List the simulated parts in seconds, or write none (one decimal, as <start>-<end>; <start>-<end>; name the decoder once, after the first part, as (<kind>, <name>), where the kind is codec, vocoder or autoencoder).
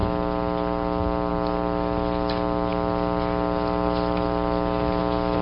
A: none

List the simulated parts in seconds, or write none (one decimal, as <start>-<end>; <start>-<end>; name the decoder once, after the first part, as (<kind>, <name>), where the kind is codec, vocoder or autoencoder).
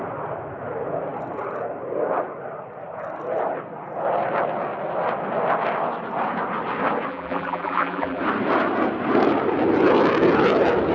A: 7.1-8.2 (vocoder, BigVGAN v2)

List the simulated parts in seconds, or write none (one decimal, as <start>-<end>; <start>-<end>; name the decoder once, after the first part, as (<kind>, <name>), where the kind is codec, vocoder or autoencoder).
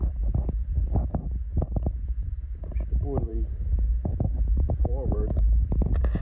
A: 0.0-3.3 (vocoder, BigVGAN v2); 3.9-6.2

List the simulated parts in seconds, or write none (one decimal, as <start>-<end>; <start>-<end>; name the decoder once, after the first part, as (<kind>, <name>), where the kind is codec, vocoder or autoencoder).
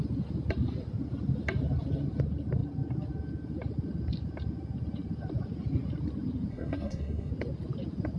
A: 6.5-7.3 (codec, SNAC)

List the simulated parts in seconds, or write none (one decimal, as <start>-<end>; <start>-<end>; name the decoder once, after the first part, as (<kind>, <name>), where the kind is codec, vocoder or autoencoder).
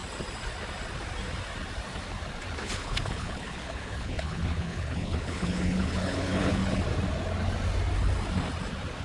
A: 2.6-6.6 (codec, HILCodec)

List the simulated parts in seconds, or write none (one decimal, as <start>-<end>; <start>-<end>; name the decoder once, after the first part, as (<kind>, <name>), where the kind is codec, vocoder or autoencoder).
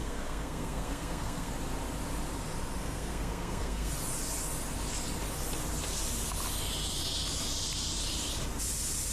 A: 0.0-1.5 (codec, SNAC); 2.8-3.9